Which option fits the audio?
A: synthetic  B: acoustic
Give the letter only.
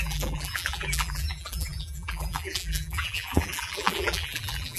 A